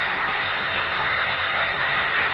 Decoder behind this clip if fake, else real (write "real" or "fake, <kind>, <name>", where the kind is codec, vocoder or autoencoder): fake, codec, SNAC